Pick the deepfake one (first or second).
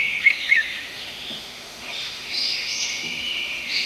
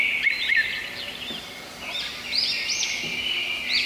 first